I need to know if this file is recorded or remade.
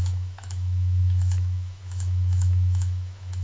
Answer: remade